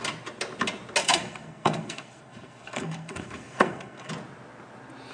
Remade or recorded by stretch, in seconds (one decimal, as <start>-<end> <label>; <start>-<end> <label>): 0.0-1.0 recorded; 1.0-4.1 remade; 4.1-5.1 recorded